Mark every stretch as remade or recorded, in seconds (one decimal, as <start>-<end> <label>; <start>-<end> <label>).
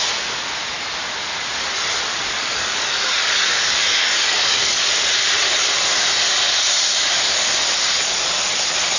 0.0-2.1 recorded; 2.1-4.9 remade; 4.9-9.0 recorded